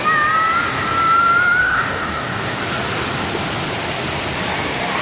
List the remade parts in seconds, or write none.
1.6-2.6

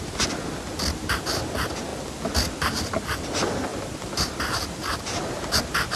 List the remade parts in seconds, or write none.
none

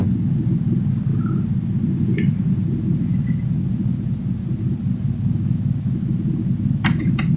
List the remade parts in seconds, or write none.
none

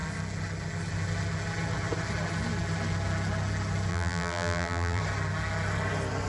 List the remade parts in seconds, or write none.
3.9-5.0

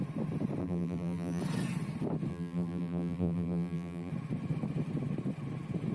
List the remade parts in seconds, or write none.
0.6-1.4; 2.3-4.1

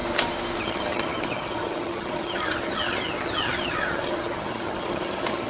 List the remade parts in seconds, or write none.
0.6-5.5

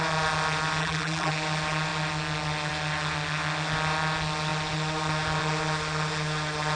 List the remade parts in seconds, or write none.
0.8-1.3

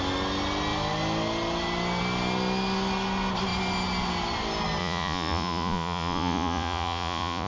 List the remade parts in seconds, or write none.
4.8-7.5